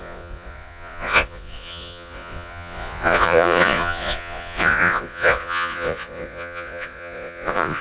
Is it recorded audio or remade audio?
remade